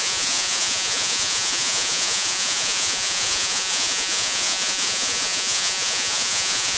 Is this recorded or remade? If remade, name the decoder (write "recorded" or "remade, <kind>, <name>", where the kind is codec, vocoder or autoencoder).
remade, vocoder, Vocos